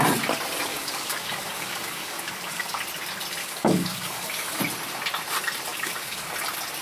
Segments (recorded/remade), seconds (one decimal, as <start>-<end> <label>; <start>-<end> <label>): 0.0-0.7 recorded; 0.7-2.8 remade; 2.8-3.4 recorded; 3.4-4.6 remade; 4.6-5.7 recorded; 5.7-6.3 remade; 6.3-6.8 recorded